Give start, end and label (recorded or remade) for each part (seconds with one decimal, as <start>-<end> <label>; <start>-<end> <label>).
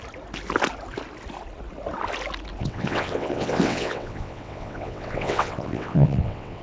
0.0-2.6 recorded; 2.6-6.6 remade